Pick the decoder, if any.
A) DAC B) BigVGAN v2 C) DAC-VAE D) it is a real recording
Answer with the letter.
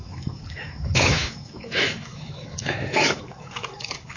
C